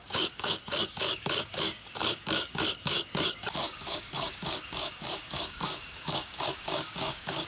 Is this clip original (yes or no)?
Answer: no